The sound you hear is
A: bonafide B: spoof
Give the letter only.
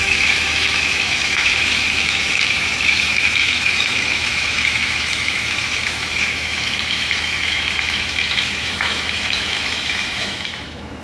B